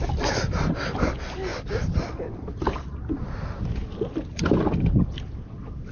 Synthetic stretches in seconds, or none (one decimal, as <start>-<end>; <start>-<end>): none